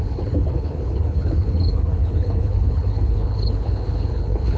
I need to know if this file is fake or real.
fake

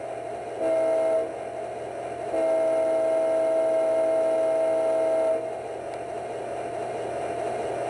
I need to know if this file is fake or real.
real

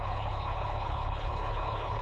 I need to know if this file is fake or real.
fake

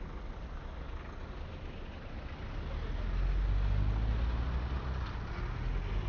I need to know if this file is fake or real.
real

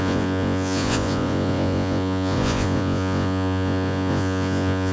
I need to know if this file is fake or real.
fake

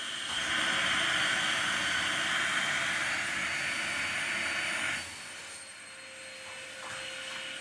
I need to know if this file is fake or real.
real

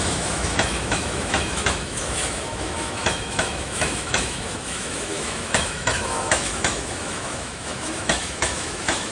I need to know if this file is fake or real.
fake